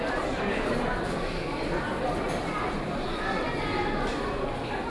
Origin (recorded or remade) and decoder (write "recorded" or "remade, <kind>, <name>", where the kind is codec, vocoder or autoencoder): recorded